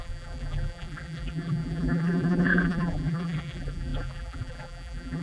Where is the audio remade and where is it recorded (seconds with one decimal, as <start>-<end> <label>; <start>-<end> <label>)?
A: 0.0-5.2 remade